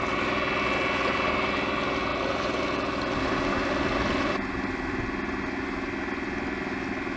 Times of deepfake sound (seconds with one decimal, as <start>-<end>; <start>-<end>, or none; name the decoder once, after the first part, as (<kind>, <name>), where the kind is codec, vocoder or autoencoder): none